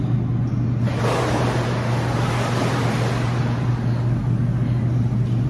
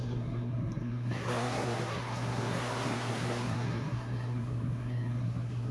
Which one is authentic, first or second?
first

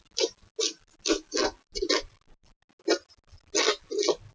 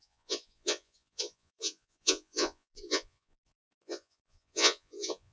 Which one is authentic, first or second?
first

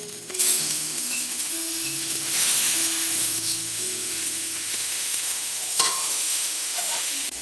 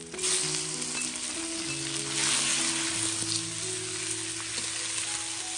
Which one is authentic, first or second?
second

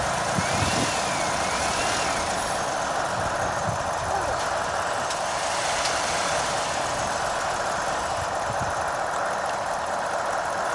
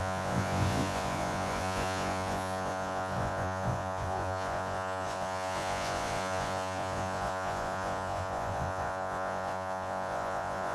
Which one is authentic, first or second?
first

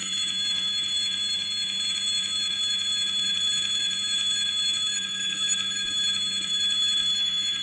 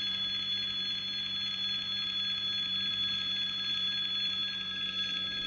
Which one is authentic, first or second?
second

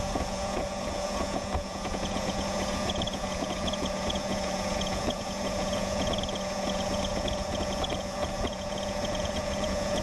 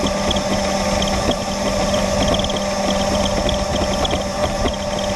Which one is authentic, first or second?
second